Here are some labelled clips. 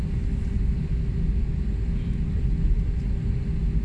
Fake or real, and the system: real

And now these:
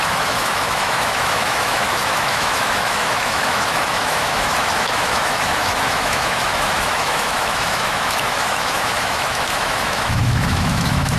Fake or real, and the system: fake, autoencoder, DAC-VAE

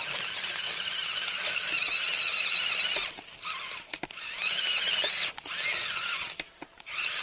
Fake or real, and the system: real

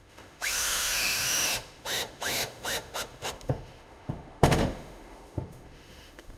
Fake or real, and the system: fake, autoencoder, DAC-VAE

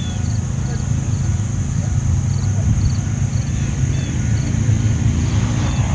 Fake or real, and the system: real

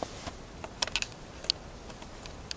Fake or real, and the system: real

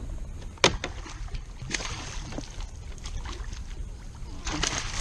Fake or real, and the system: real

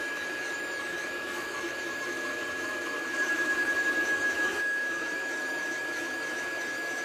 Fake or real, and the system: fake, autoencoder, DAC-VAE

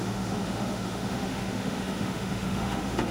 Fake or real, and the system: fake, autoencoder, DAC-VAE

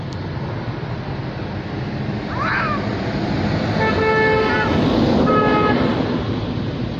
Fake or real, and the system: real